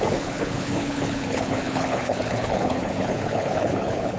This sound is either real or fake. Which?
fake